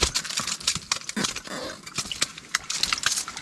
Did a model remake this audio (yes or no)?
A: no